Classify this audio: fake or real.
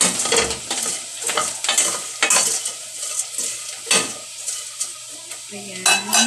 real